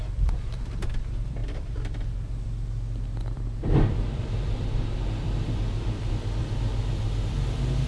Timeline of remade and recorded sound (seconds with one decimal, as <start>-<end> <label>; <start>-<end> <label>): 0.0-6.7 remade; 6.7-7.3 recorded; 7.3-7.9 remade